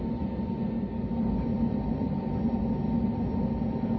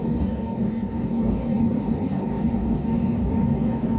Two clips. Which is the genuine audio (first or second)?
first